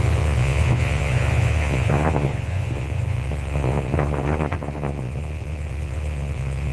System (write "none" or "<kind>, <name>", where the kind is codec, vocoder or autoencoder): vocoder, Vocos